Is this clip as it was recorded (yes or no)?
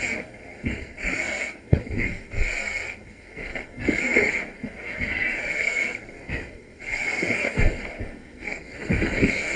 no